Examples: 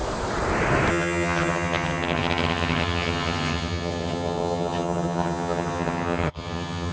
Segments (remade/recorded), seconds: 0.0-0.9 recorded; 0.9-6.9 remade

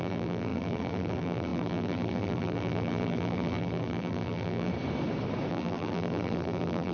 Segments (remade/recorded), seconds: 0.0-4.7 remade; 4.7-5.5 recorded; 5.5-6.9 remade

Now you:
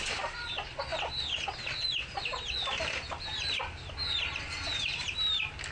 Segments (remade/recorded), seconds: 0.0-5.7 recorded

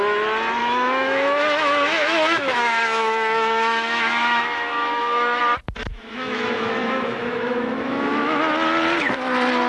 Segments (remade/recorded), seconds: 0.0-0.6 recorded; 0.6-5.4 remade; 5.4-5.9 recorded; 5.9-8.4 remade; 8.4-9.7 recorded

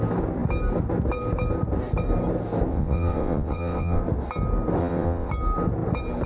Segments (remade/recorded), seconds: 0.0-2.7 recorded; 2.7-4.0 remade; 4.0-4.8 recorded; 4.8-5.3 remade; 5.3-6.3 recorded

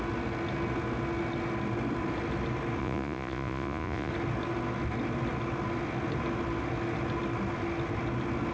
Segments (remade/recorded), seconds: 0.0-2.8 recorded; 2.8-4.1 remade; 4.1-8.5 recorded

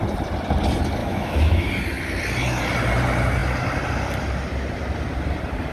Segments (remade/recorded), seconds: 0.0-1.0 recorded; 1.0-1.7 remade; 1.7-5.7 recorded